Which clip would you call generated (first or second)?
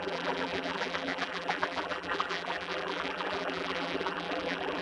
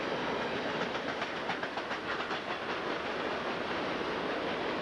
first